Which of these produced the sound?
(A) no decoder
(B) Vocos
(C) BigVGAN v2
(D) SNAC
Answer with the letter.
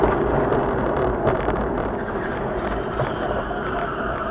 C